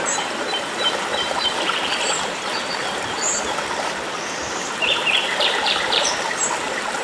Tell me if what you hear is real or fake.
fake